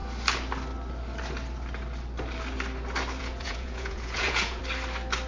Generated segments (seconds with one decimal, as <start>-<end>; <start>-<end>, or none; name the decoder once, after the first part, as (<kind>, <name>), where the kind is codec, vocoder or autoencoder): 3.2-4.6 (vocoder, Vocos)